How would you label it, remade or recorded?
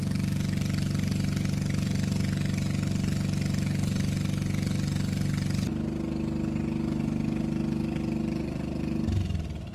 recorded